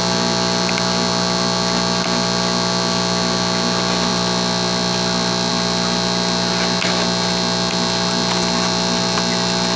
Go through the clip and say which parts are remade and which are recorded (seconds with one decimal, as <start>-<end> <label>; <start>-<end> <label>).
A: 0.0-9.8 recorded